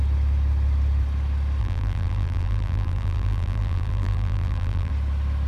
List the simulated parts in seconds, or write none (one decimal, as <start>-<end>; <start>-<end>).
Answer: 1.6-4.9